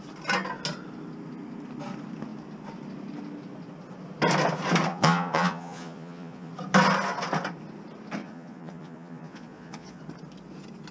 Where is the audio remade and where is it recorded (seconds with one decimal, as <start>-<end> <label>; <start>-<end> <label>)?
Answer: 0.0-4.9 recorded; 4.9-6.5 remade; 6.5-8.2 recorded; 8.2-10.0 remade; 10.0-10.9 recorded